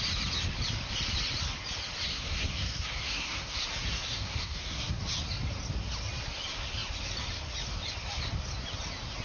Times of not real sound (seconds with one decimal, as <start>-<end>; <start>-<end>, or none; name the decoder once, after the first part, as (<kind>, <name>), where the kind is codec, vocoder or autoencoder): 2.1-3.6 (codec, SNAC); 4.2-5.0